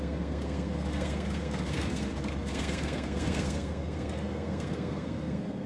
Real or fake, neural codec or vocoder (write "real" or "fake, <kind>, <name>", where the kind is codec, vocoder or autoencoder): fake, codec, SNAC